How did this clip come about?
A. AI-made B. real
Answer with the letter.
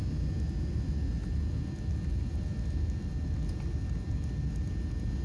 B